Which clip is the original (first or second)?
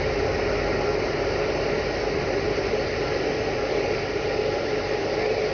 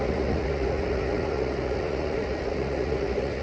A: first